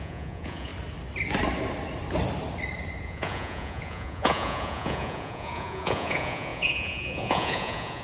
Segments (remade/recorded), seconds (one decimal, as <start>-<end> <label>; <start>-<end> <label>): 0.0-0.7 remade; 0.7-3.0 recorded; 3.0-8.0 remade